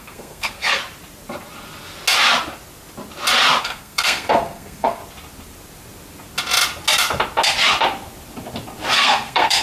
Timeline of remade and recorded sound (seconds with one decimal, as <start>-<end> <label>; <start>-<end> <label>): 0.0-0.8 remade; 0.8-3.6 recorded; 3.6-5.0 remade; 5.0-8.9 recorded; 8.9-9.6 remade